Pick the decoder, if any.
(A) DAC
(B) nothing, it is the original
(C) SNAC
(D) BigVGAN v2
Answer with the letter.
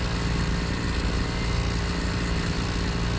B